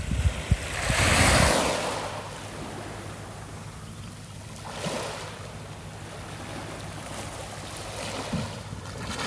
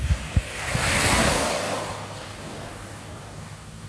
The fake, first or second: second